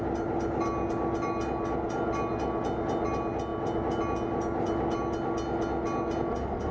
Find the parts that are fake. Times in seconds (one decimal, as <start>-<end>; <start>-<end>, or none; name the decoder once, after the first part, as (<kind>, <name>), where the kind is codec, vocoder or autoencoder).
none